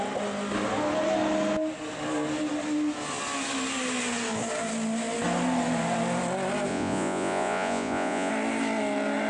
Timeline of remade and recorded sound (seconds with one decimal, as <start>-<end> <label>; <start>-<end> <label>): 0.0-6.7 recorded; 6.7-8.3 remade; 8.3-9.3 recorded